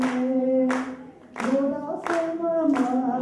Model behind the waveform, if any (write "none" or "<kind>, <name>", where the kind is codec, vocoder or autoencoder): none